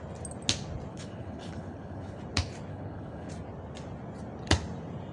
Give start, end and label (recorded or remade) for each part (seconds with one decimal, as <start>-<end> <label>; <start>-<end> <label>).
0.0-0.9 recorded; 0.9-2.2 remade; 2.2-2.7 recorded; 2.7-3.3 remade; 3.3-5.1 recorded